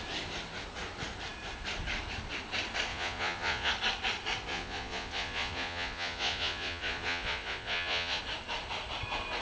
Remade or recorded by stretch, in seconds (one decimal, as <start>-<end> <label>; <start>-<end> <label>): 0.0-2.9 recorded; 2.9-3.7 remade; 3.7-4.5 recorded; 4.5-8.2 remade; 8.2-9.4 recorded